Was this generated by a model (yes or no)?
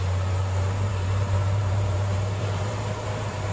yes